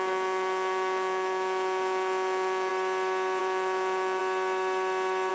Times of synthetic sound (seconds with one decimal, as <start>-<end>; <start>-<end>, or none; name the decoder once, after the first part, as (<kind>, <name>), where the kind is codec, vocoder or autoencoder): 0.0-2.7 (vocoder, Vocos); 3.4-4.2